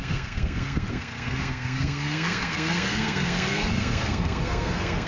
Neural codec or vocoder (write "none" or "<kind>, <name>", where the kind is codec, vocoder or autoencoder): codec, SNAC